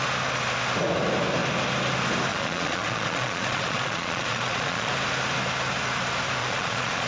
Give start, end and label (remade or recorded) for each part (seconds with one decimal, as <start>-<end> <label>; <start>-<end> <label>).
0.0-2.3 recorded; 2.3-4.9 remade; 4.9-6.4 recorded; 6.4-7.1 remade